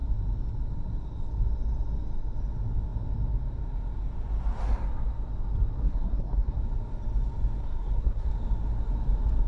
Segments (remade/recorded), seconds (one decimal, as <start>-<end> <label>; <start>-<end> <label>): 0.0-5.8 recorded; 5.8-6.6 remade; 6.6-7.6 recorded; 7.6-8.3 remade; 8.3-9.5 recorded